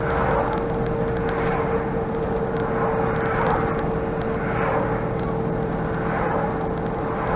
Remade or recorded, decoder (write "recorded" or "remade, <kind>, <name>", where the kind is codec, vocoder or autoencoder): recorded